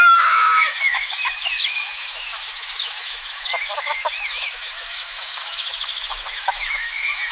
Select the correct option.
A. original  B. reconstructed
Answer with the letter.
B